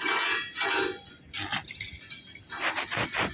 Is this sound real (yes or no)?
yes